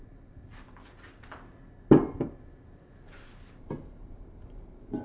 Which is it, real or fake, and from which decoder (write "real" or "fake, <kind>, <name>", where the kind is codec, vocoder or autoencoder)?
real